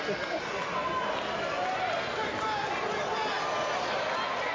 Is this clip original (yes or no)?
yes